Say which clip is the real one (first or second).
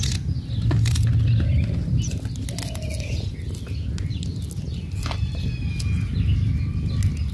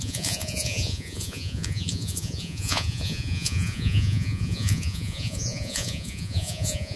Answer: first